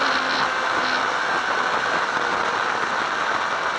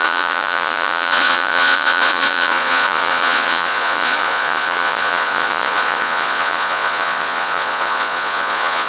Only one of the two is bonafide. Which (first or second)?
first